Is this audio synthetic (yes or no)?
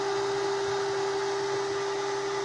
no